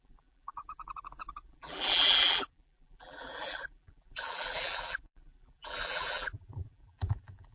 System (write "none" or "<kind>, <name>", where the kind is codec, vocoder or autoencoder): vocoder, BigVGAN v2